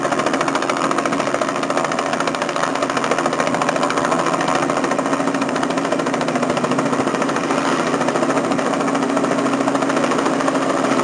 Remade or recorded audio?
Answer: recorded